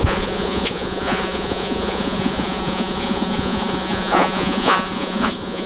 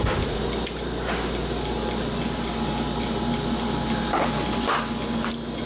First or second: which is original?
second